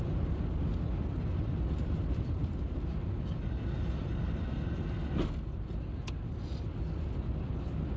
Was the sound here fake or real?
real